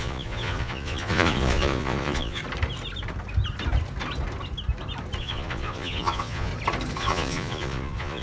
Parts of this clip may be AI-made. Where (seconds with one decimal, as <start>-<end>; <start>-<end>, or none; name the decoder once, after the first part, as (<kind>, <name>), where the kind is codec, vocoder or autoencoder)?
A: 0.0-2.4 (vocoder, Vocos); 5.2-6.5; 7.0-8.2